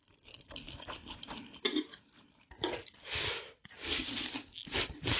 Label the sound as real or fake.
real